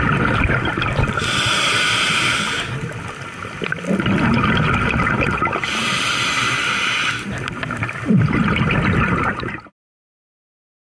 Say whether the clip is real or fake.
real